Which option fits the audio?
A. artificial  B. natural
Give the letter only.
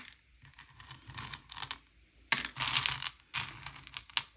B